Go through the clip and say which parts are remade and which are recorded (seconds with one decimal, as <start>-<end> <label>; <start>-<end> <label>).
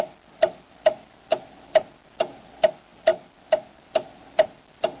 0.0-5.0 recorded